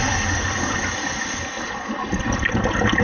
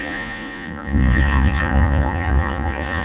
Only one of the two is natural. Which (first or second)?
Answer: first